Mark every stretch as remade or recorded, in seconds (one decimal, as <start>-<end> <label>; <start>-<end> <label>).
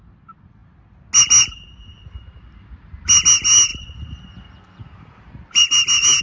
0.0-6.2 recorded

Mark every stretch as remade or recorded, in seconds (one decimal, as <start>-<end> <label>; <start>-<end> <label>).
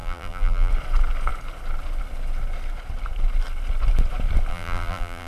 0.0-0.7 remade; 0.7-4.5 recorded; 4.5-5.3 remade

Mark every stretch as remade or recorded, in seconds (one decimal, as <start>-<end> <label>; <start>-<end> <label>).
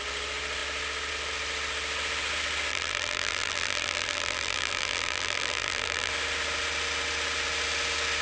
0.0-2.7 recorded; 2.7-6.1 remade; 6.1-8.2 recorded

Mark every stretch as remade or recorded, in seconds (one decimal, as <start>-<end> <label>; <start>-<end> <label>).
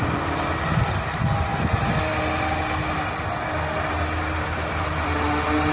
0.0-1.5 remade; 1.5-3.9 recorded; 3.9-5.7 remade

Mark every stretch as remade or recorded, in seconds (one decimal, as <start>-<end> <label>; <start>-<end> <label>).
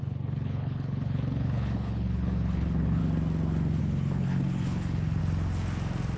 0.0-3.0 remade; 3.0-3.8 recorded; 3.8-5.2 remade; 5.2-6.2 recorded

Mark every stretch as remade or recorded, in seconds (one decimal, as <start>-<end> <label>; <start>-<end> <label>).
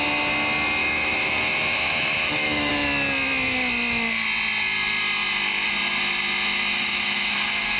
0.0-0.8 recorded; 0.8-2.7 remade; 2.7-6.7 recorded; 6.7-7.8 remade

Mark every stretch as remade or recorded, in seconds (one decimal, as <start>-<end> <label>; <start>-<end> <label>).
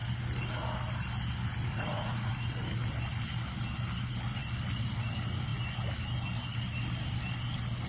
0.0-1.6 recorded; 1.6-2.3 remade; 2.3-7.9 recorded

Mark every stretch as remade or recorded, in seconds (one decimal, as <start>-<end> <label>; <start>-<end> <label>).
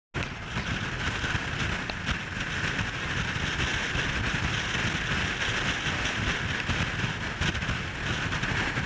0.0-8.9 recorded